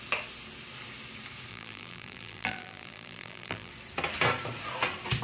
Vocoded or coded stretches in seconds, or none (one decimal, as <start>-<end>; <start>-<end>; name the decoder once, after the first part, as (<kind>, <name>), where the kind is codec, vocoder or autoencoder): 1.5-3.7 (vocoder, BigVGAN v2)